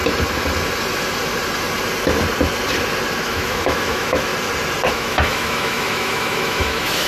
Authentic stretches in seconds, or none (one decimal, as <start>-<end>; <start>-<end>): 0.0-3.2; 4.3-4.9